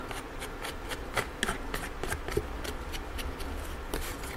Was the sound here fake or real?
real